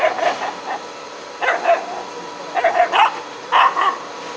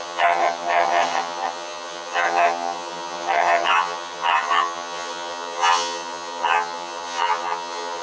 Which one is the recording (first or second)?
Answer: first